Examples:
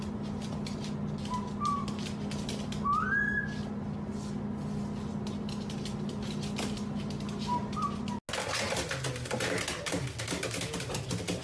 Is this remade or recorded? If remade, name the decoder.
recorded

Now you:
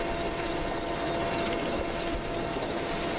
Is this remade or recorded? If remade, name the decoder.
recorded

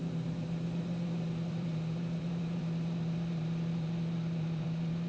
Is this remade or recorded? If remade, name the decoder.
remade, vocoder, BigVGAN v2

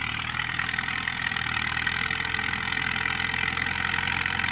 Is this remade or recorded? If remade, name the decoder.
remade, vocoder, BigVGAN v2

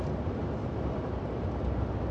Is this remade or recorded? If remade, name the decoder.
recorded